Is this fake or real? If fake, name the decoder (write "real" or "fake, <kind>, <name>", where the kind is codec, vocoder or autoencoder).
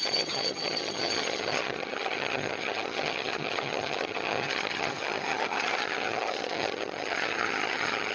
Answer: fake, vocoder, HiFi-GAN